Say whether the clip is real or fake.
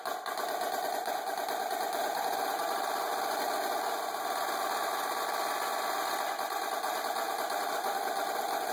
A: real